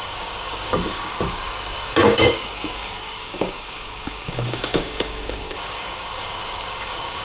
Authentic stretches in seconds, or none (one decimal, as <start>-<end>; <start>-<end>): none